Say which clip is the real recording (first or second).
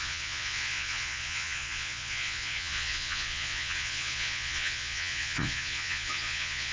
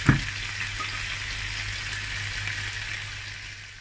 second